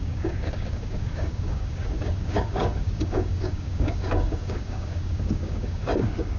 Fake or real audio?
fake